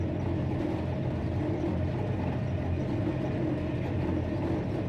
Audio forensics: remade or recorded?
recorded